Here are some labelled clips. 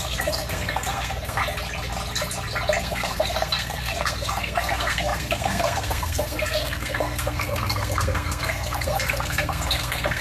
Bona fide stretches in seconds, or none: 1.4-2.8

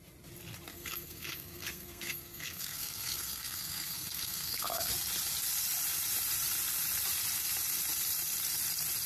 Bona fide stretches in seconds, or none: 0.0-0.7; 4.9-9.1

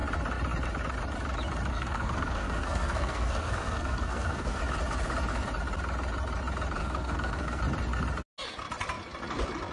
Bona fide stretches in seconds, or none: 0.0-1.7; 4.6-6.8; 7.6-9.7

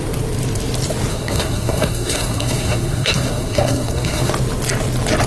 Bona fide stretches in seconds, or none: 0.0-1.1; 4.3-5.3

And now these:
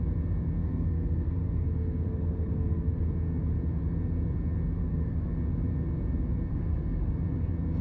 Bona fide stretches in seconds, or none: 0.0-0.6; 3.0-4.8; 5.3-6.5; 7.1-7.8

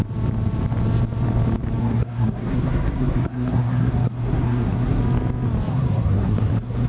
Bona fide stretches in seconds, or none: 0.0-1.8; 5.0-5.7

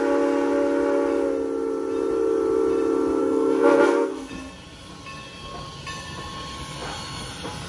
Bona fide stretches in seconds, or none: 0.0-3.2; 4.3-7.7

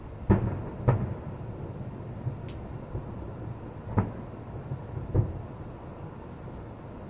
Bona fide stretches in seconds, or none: 0.0-7.1